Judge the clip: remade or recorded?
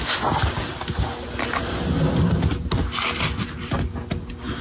recorded